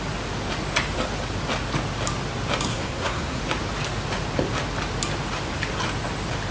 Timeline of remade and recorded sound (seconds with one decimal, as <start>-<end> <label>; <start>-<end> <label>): 0.0-2.7 recorded; 2.7-3.4 remade; 3.4-6.5 recorded